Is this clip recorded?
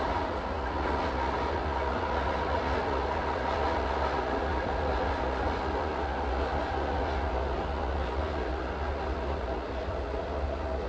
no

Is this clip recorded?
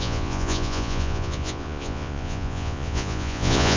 no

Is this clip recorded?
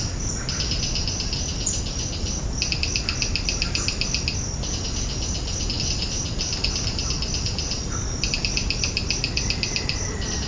yes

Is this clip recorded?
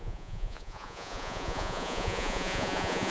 no